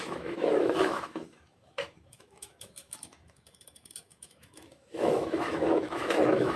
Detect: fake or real fake